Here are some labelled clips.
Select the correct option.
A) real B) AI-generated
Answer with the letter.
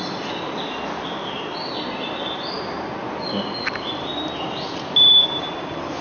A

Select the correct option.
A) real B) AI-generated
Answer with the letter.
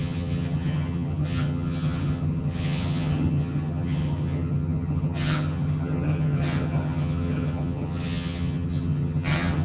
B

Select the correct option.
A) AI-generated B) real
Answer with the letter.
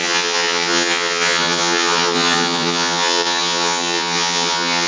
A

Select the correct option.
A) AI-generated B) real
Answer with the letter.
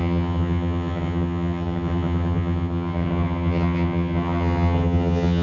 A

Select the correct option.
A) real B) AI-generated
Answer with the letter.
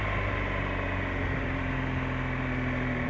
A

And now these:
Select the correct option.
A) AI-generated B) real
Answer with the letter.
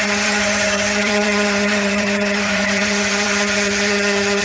A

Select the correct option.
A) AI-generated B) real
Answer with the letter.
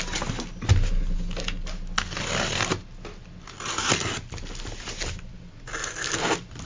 B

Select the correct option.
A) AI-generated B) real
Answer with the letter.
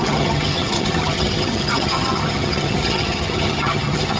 A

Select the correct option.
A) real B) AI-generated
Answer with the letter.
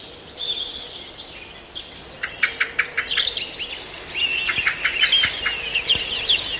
A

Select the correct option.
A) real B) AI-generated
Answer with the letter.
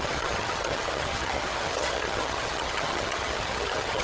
B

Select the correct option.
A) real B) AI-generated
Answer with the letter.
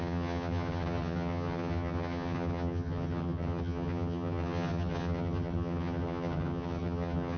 B